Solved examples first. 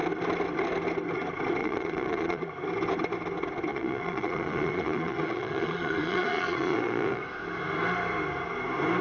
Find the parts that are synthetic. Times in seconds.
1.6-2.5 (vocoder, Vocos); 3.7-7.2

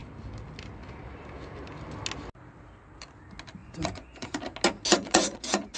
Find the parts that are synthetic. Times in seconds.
3.6-4.4 (vocoder, Vocos); 4.9-5.8

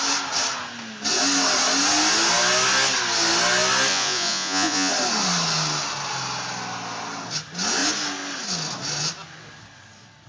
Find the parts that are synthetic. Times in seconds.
3.9-4.9 (vocoder, Vocos)

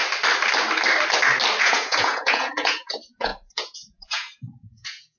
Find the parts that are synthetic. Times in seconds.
1.6-5.2 (vocoder, Vocos)

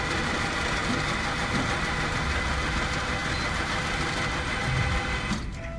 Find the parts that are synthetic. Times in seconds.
none

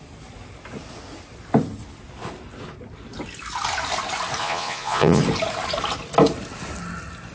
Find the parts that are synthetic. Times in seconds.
4.4-5.2 (vocoder, Vocos)